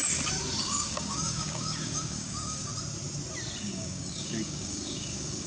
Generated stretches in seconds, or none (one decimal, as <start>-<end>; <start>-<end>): 0.6-2.7; 3.6-5.5